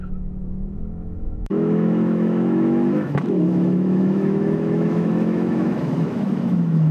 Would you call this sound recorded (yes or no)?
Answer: no